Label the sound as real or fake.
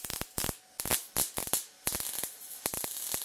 real